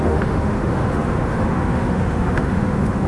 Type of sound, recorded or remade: remade